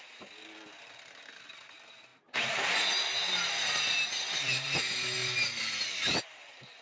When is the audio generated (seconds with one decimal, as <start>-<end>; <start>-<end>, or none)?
none